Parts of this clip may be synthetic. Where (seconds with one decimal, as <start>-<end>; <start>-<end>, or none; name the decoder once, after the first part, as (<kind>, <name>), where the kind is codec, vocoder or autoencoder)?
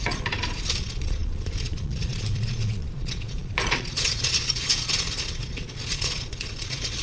0.0-7.0 (vocoder, Vocos)